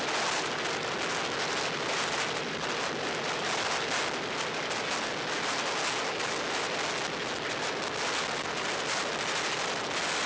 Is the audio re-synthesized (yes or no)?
no